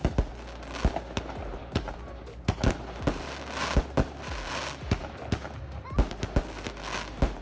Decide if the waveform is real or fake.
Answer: real